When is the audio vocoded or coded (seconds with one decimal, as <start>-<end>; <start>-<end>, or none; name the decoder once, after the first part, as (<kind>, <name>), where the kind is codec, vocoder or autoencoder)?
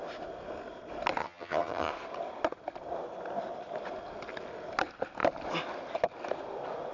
1.2-1.9 (vocoder, HiFi-GAN)